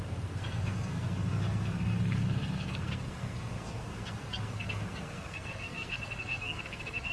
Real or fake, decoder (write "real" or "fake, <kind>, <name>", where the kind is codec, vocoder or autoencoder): fake, codec, SNAC